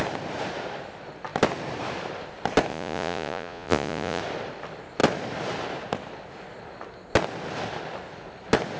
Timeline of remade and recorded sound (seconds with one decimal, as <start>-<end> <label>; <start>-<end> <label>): 0.0-2.7 recorded; 2.7-4.2 remade; 4.2-8.8 recorded